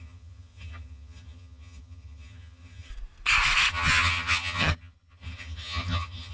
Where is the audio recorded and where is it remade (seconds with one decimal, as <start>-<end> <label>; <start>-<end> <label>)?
0.0-2.9 remade; 2.9-3.7 recorded; 3.7-6.3 remade